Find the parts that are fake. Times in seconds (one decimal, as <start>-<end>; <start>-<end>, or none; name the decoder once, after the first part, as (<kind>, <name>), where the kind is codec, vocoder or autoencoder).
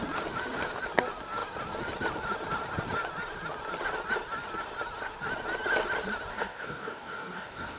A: 6.3-7.8 (codec, DAC)